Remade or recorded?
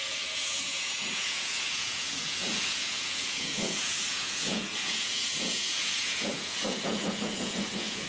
remade